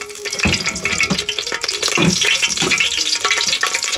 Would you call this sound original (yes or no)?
no